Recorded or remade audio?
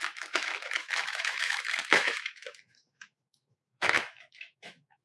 remade